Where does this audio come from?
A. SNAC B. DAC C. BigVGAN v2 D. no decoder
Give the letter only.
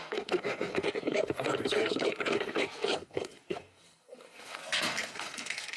A